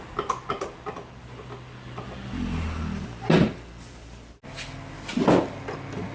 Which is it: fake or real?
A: real